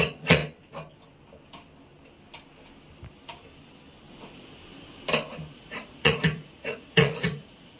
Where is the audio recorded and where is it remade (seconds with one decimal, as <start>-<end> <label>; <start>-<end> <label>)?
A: 0.0-0.4 remade; 0.4-4.1 recorded; 4.1-4.6 remade; 4.6-5.5 recorded; 5.5-7.8 remade